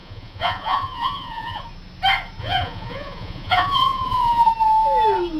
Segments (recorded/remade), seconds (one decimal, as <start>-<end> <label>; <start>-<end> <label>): 0.0-1.6 remade; 1.6-2.4 recorded; 2.4-4.5 remade; 4.5-5.4 recorded

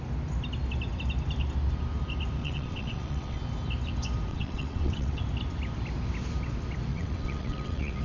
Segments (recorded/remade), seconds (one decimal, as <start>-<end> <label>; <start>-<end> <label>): 0.0-2.4 recorded; 2.4-3.4 remade; 3.4-4.3 recorded; 4.3-5.2 remade; 5.2-6.9 recorded; 6.9-8.0 remade

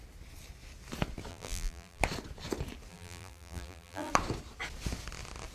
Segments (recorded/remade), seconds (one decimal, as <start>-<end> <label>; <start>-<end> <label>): 0.0-1.3 recorded; 1.3-2.0 remade; 2.0-2.9 recorded; 2.9-4.1 remade; 4.1-5.5 recorded

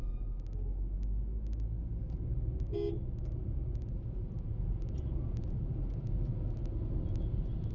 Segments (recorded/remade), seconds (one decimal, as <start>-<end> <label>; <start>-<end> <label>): 0.0-7.7 recorded

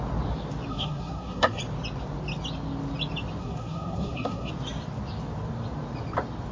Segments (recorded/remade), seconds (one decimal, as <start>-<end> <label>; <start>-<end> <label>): 0.0-0.7 recorded; 0.7-1.6 remade; 1.6-3.4 recorded; 3.4-4.5 remade; 4.5-6.5 recorded

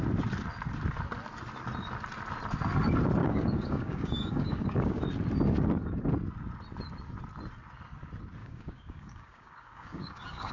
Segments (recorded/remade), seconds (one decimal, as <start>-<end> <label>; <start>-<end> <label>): 0.0-3.2 recorded; 3.2-5.0 remade; 5.0-8.4 recorded; 8.4-10.5 remade

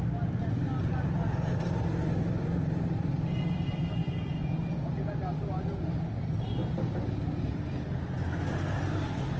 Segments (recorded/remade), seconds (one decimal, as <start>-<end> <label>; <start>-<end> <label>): 0.0-4.0 recorded; 4.0-5.1 remade; 5.1-9.4 recorded

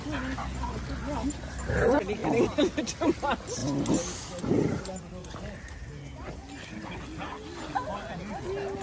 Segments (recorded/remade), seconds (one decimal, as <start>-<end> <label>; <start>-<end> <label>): 0.0-8.8 recorded